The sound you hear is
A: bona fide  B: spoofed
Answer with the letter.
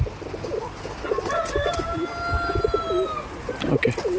A